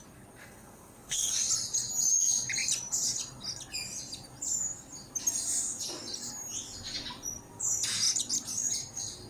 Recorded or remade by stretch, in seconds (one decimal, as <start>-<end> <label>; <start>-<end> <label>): 0.0-0.4 recorded; 0.4-1.5 remade; 1.5-9.3 recorded